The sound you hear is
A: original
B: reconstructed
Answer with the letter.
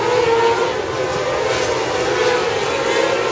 A